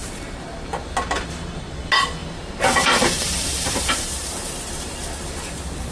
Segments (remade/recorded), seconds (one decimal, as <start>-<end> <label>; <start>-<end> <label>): 0.0-1.7 remade; 1.7-2.2 recorded; 2.2-5.9 remade